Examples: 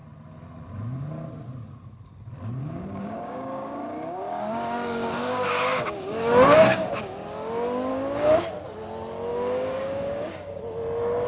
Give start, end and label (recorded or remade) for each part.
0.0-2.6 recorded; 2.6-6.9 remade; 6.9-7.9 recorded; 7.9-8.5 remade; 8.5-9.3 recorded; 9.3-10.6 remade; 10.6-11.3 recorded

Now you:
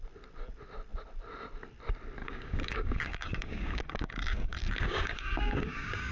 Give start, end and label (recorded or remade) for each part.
0.0-2.2 recorded; 2.2-6.1 remade